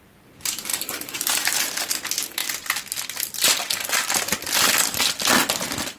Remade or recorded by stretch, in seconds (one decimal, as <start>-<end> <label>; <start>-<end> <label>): 0.0-0.7 recorded; 0.7-1.9 remade; 1.9-6.0 recorded